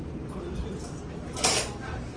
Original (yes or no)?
yes